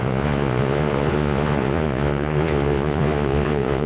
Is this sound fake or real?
fake